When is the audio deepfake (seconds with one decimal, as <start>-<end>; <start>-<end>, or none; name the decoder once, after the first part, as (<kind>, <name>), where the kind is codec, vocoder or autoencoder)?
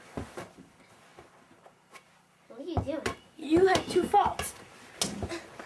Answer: none